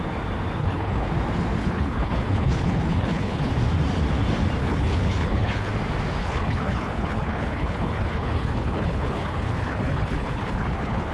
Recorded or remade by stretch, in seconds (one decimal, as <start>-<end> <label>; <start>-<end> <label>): 0.0-0.6 recorded; 0.6-1.1 remade; 1.1-1.6 recorded; 1.6-3.5 remade; 3.5-4.6 recorded; 4.6-5.7 remade; 5.7-6.2 recorded; 6.2-11.1 remade